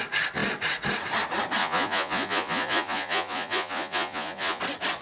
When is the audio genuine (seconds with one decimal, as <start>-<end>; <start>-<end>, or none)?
0.0-1.6; 4.6-5.0